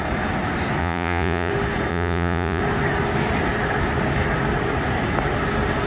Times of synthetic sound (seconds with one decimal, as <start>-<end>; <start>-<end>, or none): 0.8-1.5; 1.9-2.6